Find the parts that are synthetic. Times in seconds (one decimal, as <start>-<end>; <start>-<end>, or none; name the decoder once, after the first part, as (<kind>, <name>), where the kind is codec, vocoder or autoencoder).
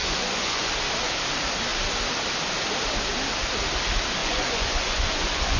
0.0-0.7 (vocoder, Vocos); 4.2-5.6